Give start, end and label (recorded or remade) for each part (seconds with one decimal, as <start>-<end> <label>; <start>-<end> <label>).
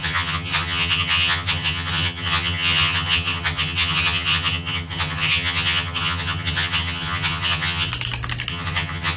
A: 0.0-7.9 remade; 7.9-8.5 recorded; 8.5-9.2 remade